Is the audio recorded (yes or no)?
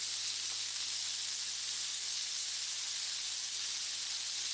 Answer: yes